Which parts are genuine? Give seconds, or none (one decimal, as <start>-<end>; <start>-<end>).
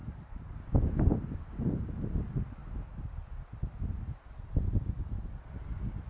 0.6-6.1